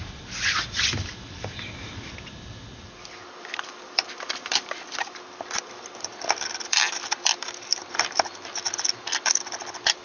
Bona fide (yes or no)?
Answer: no